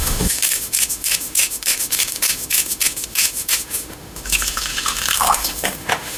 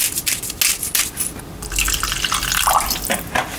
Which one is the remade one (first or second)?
first